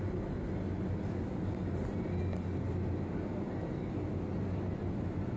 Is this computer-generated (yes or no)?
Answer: no